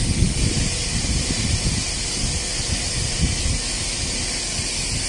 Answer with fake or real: real